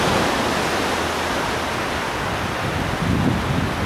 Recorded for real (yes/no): yes